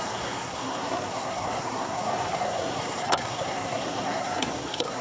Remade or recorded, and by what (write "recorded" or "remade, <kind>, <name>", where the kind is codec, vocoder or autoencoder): remade, codec, SNAC